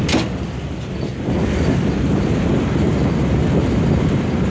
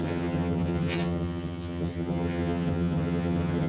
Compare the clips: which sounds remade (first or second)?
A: second